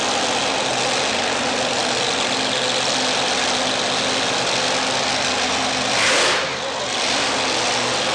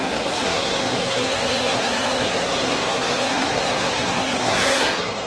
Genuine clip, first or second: first